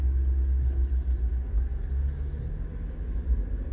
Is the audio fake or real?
real